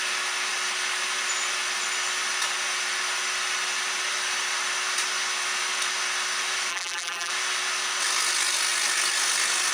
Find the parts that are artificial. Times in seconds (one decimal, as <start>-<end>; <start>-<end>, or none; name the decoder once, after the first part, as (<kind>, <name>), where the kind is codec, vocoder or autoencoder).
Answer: 6.7-7.3 (vocoder, BigVGAN v2)

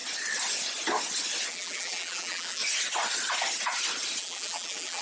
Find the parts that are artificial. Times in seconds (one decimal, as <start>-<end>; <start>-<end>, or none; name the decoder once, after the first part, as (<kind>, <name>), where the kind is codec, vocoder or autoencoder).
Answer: 1.5-2.6 (vocoder, BigVGAN v2); 4.2-5.0

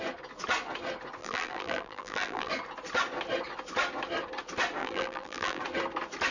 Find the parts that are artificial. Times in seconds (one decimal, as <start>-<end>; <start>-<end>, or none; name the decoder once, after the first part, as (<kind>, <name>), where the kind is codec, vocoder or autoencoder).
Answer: 1.2-2.5 (vocoder, BigVGAN v2); 4.8-5.6

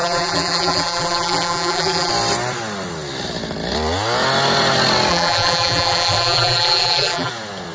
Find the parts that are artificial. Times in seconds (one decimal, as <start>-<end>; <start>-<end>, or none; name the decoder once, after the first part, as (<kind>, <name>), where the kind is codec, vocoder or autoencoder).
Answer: 0.0-2.1 (vocoder, BigVGAN v2); 5.1-7.3

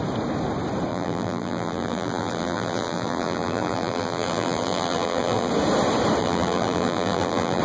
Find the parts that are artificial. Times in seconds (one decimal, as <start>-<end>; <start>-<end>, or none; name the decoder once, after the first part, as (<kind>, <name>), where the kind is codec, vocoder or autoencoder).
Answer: 0.9-5.5 (vocoder, BigVGAN v2); 6.2-7.6